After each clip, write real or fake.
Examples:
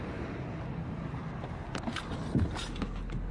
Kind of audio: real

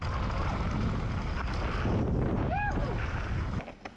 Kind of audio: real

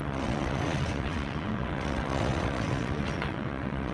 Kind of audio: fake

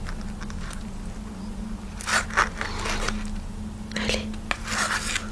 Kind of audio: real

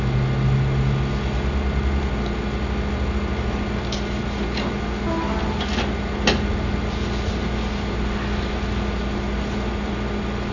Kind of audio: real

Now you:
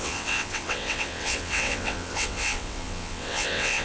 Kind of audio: fake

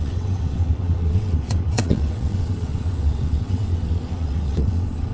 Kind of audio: fake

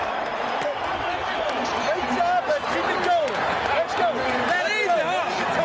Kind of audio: real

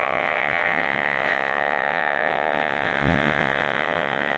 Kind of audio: fake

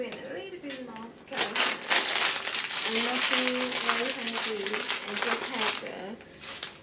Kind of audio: real